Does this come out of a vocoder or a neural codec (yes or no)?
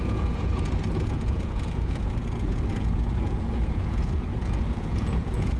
yes